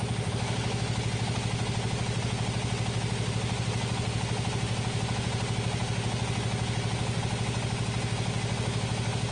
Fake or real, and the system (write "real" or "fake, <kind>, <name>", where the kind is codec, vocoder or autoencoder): real